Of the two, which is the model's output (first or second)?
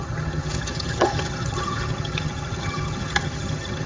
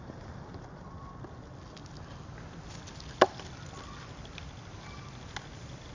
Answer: first